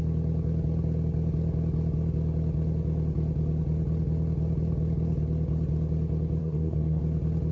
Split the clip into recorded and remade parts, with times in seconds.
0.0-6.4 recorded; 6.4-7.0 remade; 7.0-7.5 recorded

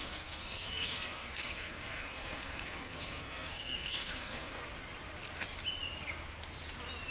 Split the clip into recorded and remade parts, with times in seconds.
0.0-4.6 remade; 4.6-7.1 recorded

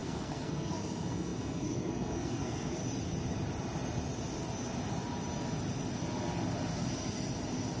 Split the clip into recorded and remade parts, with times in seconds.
0.0-2.8 remade; 2.8-7.8 recorded

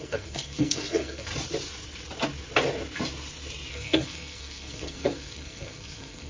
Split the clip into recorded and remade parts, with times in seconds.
0.0-1.3 remade; 1.3-3.7 recorded; 3.7-6.3 remade

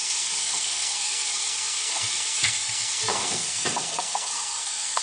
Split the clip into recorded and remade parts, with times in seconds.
0.0-5.0 remade

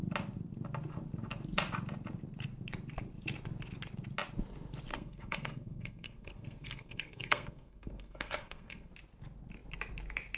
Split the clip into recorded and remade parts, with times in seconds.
0.0-4.9 recorded; 4.9-8.9 remade; 8.9-10.4 recorded

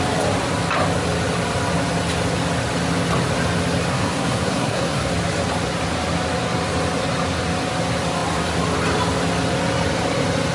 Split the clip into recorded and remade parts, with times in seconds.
0.0-3.9 recorded; 3.9-5.1 remade; 5.1-10.5 recorded

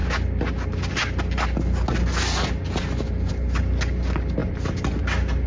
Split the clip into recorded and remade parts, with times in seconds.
0.0-5.5 recorded